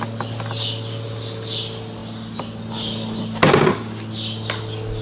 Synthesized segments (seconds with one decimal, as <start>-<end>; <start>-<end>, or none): none